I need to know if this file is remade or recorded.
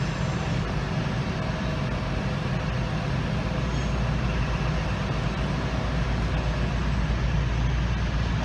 recorded